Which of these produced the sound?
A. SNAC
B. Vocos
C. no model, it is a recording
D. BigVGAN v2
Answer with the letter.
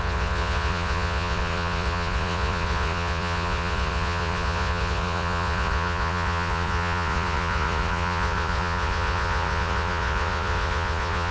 B